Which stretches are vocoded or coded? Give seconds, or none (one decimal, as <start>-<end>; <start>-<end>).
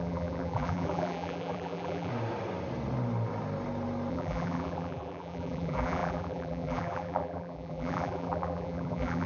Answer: 0.0-2.1; 4.1-9.3